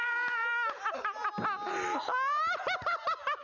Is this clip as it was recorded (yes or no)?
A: yes